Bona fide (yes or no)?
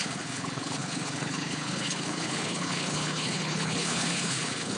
no